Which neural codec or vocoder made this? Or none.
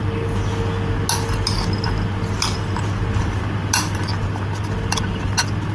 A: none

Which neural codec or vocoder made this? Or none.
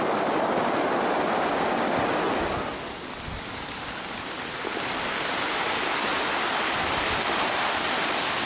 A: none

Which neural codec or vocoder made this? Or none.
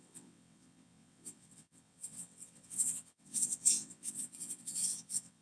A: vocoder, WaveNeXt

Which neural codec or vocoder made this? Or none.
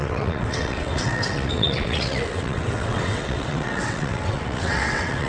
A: vocoder, WaveNeXt